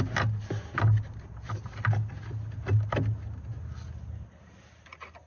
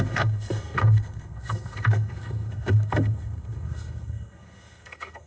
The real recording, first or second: first